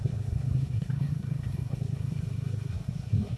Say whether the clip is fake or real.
fake